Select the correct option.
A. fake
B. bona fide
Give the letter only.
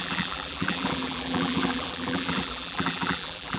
A